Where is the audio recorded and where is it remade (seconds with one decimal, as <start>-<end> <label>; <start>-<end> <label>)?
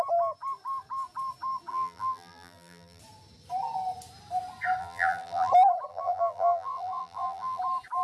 0.0-1.7 recorded; 1.7-3.0 remade; 3.0-4.8 recorded; 4.8-5.5 remade; 5.5-5.9 recorded; 5.9-7.6 remade; 7.6-8.0 recorded